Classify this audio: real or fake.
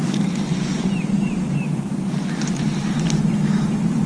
fake